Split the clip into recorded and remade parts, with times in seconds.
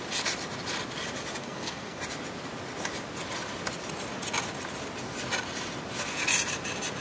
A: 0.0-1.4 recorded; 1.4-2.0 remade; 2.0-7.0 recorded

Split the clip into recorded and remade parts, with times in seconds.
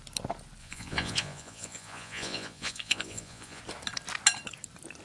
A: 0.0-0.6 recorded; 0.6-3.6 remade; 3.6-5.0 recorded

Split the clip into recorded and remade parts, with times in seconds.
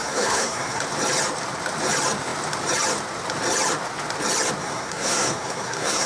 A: 0.0-0.8 remade; 0.8-4.6 recorded; 4.6-6.1 remade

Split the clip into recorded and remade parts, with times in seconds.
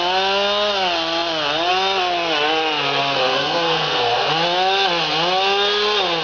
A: 0.0-3.0 recorded; 3.0-4.3 remade; 4.3-6.2 recorded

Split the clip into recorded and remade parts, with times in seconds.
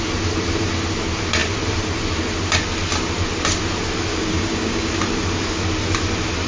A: 0.0-4.1 recorded; 4.1-4.9 remade; 4.9-6.5 recorded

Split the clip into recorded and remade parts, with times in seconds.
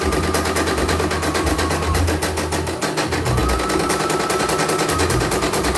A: 0.0-5.8 recorded